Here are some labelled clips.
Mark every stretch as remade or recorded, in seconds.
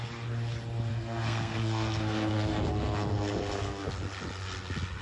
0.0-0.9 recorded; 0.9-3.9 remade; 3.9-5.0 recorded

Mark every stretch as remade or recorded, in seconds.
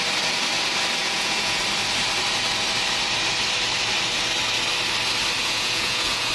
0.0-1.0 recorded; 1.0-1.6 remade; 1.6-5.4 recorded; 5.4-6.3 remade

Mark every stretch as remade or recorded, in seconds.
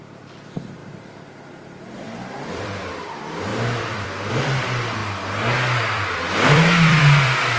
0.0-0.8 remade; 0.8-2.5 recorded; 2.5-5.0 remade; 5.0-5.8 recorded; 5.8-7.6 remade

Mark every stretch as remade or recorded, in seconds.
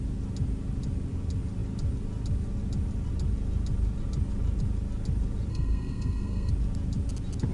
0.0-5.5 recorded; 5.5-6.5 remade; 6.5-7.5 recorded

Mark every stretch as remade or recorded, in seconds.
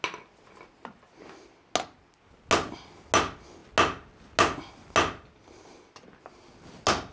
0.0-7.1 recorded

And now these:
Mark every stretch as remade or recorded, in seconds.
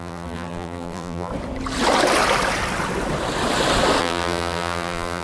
0.0-1.3 remade; 1.3-4.0 recorded; 4.0-5.2 remade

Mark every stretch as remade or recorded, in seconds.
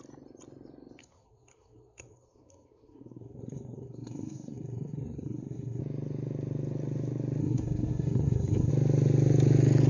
0.0-1.0 recorded; 1.0-5.8 remade; 5.8-7.4 recorded; 7.4-8.7 remade; 8.7-9.9 recorded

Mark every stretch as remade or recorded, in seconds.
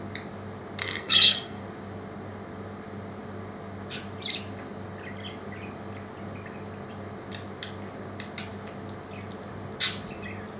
0.0-0.8 recorded; 0.8-1.6 remade; 1.6-10.6 recorded